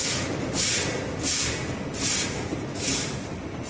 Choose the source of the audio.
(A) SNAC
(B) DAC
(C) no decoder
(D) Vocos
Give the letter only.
C